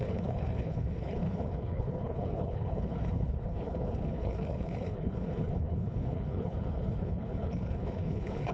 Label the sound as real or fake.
fake